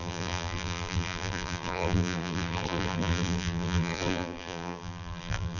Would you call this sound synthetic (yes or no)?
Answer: yes